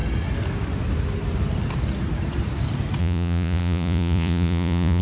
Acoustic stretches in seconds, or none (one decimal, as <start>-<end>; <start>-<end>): 0.0-3.0